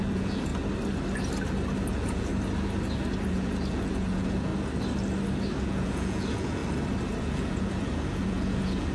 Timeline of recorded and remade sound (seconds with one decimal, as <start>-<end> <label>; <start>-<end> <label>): 0.0-0.5 remade; 0.5-1.9 recorded; 1.9-2.3 remade; 2.3-3.3 recorded; 3.3-4.5 remade; 4.5-5.6 recorded; 5.6-6.6 remade; 6.6-7.2 recorded; 7.2-8.9 remade